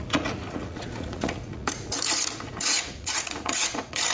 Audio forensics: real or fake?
fake